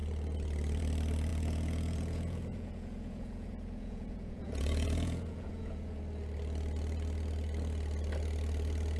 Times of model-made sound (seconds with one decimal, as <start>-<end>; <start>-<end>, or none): 1.3-6.0